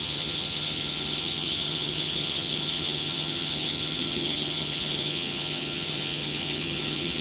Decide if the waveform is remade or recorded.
remade